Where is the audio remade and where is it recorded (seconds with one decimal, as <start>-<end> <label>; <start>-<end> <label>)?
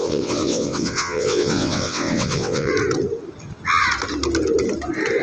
0.0-2.7 remade; 2.7-5.2 recorded